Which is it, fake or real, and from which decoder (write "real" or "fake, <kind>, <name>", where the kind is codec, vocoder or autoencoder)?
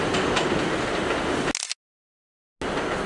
real